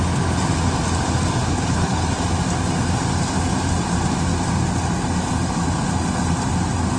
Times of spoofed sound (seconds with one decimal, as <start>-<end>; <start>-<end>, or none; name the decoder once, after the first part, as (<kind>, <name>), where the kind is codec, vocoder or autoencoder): 1.4-2.1 (codec, HILCodec)